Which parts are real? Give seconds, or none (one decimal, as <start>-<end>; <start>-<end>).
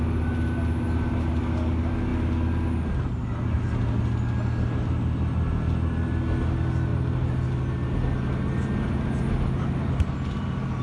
0.0-10.8